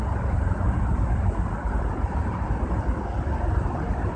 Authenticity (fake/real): real